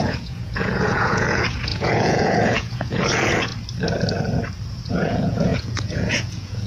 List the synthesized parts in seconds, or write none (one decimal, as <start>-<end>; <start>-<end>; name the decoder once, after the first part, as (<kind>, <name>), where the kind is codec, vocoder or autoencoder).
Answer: 0.0-3.5 (vocoder, Vocos); 4.9-6.7